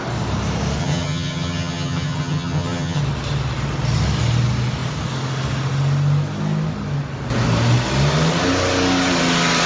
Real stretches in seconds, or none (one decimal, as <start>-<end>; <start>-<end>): 0.0-0.8; 3.0-9.7